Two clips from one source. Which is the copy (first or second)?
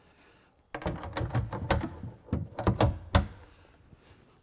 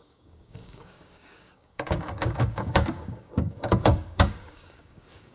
second